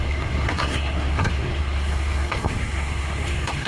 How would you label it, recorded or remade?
remade